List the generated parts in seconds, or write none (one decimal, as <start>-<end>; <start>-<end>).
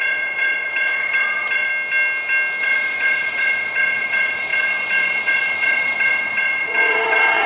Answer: 0.0-1.7; 2.6-7.5